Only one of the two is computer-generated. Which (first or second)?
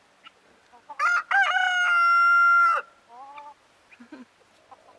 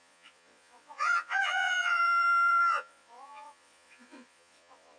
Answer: second